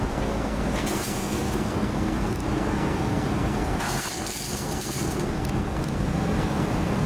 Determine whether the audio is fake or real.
fake